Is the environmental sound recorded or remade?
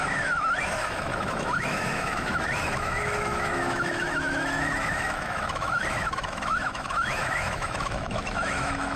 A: remade